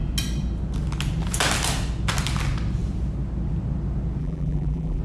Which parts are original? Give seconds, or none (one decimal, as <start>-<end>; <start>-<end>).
0.0-4.2

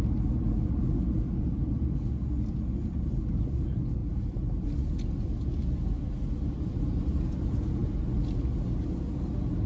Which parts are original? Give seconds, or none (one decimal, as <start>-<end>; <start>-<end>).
0.0-9.7